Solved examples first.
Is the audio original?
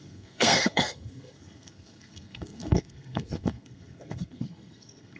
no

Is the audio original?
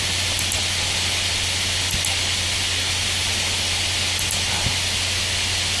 yes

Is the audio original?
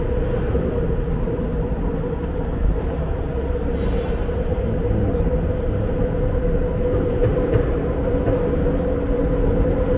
yes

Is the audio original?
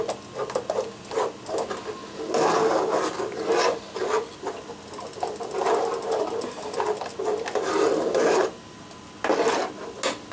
yes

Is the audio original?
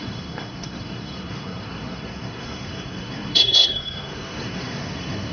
no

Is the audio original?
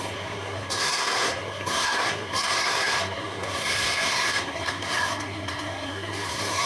no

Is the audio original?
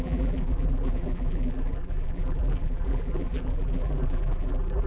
no